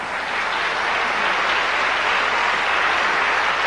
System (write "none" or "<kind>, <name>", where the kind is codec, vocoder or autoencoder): none